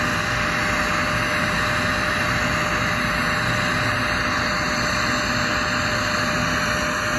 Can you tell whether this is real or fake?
real